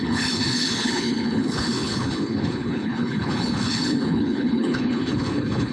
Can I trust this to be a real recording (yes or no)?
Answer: no